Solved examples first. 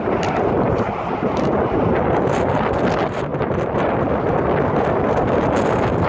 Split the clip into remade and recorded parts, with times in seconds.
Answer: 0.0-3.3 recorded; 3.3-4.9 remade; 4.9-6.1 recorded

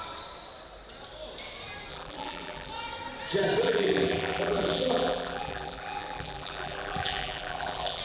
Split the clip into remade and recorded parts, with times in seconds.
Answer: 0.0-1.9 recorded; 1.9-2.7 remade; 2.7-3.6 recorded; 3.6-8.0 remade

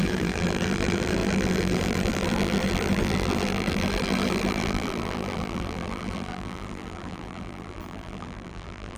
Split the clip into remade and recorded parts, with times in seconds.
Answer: 0.0-9.0 remade

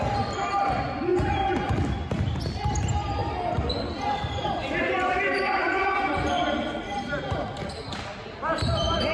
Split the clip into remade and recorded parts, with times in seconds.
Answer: 0.0-3.2 recorded; 3.2-4.8 remade; 4.8-5.3 recorded; 5.3-7.8 remade; 7.8-9.1 recorded

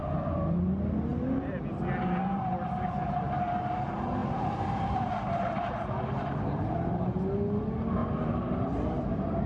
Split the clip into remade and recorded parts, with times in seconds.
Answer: 0.0-4.2 recorded; 4.2-7.0 remade; 7.0-8.0 recorded; 8.0-9.5 remade